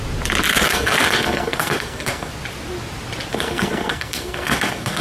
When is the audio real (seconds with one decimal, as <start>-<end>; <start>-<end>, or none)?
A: 0.0-0.5; 2.3-3.3